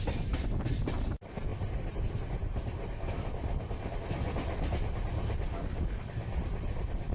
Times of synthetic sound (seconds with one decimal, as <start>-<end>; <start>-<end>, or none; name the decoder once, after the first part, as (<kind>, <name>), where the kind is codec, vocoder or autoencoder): 5.5-6.0 (codec, DAC)